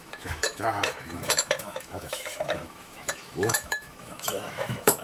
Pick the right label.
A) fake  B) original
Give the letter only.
A